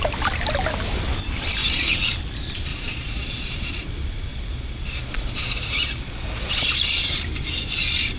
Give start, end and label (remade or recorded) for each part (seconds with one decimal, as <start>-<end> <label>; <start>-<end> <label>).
0.0-2.7 recorded; 2.7-3.7 remade; 3.7-4.3 recorded; 4.3-6.8 remade; 6.8-8.2 recorded